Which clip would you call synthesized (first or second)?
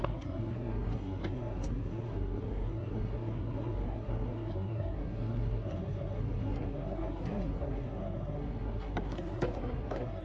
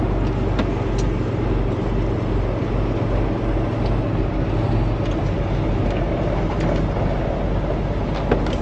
first